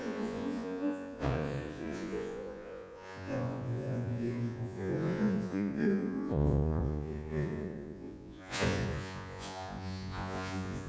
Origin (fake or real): fake